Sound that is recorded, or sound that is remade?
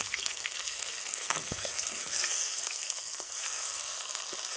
remade